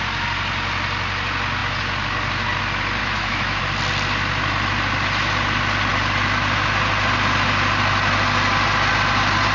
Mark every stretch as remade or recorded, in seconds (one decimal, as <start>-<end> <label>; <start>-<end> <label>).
0.0-3.0 recorded; 3.0-3.6 remade; 3.6-9.5 recorded